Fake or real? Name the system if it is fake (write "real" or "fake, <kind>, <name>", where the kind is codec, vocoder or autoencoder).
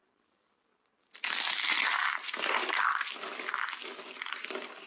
fake, vocoder, BigVGAN v2